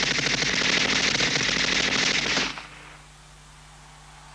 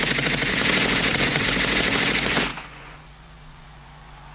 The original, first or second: first